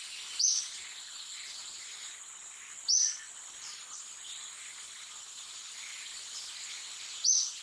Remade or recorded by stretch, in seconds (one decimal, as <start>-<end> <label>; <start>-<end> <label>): 0.0-7.6 recorded